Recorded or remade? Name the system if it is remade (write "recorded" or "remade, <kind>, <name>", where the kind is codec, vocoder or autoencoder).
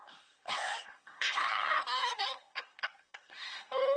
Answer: remade, codec, SNAC